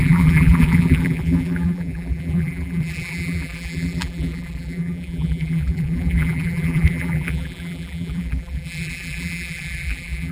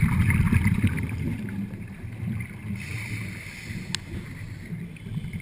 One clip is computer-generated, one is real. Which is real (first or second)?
second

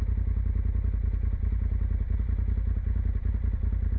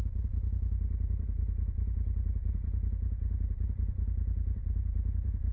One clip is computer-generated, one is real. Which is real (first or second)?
first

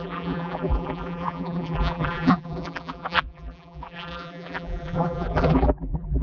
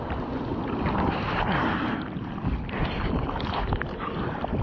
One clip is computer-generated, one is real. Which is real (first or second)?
second